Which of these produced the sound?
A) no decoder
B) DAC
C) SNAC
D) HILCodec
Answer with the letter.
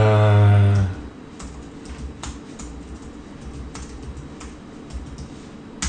A